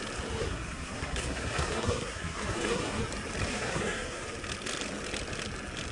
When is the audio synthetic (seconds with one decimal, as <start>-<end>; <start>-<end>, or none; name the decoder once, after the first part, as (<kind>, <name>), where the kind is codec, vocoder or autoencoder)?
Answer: 0.4-3.0 (codec, SNAC); 3.5-4.2